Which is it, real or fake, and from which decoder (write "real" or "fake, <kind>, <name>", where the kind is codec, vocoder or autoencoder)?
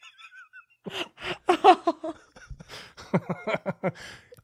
real